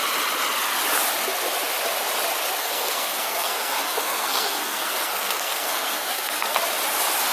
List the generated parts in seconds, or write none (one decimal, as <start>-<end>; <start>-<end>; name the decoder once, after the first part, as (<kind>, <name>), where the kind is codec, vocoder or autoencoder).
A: 2.6-6.6 (codec, SNAC)